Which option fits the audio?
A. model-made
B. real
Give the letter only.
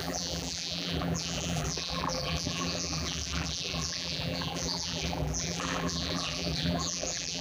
A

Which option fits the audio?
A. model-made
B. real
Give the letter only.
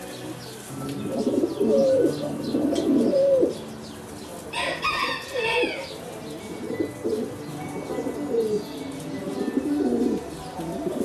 B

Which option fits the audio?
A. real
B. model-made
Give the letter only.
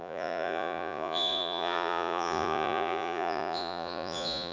B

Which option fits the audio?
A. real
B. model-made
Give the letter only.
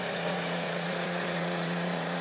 B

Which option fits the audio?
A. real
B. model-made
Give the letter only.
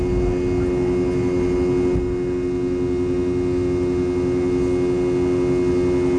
A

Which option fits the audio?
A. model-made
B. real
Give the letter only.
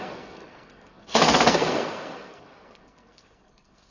A